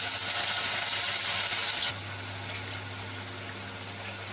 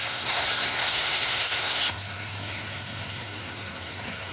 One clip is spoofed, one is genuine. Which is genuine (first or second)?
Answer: first